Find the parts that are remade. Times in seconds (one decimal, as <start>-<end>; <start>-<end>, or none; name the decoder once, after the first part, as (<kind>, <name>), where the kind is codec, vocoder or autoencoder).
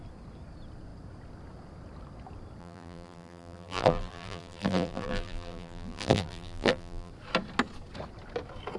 2.6-7.1 (vocoder, BigVGAN v2)